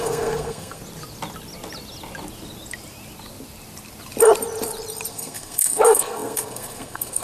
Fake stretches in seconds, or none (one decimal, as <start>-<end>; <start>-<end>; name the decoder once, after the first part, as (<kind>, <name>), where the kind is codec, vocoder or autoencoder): 0.0-0.8 (codec, SNAC); 5.1-7.2